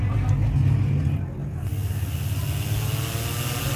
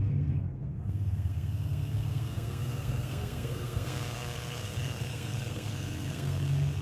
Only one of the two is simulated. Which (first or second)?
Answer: second